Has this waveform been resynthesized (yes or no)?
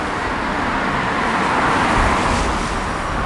no